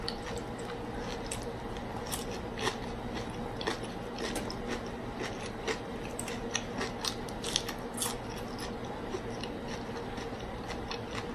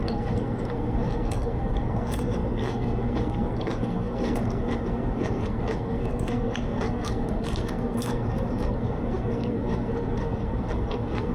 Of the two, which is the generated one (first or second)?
second